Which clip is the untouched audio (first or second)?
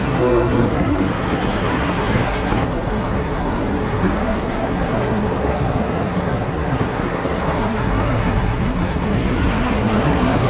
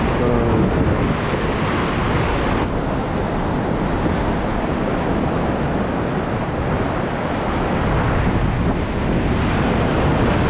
second